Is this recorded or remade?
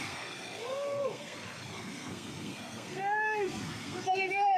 remade